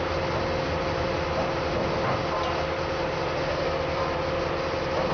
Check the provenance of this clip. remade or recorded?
recorded